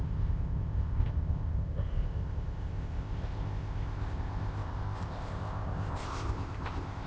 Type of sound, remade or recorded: remade